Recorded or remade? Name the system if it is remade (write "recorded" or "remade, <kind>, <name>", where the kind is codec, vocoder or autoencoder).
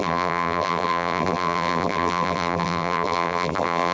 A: remade, vocoder, BigVGAN v2